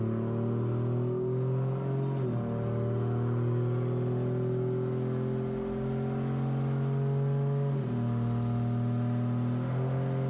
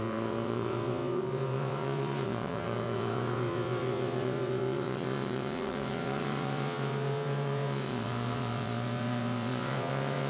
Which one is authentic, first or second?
first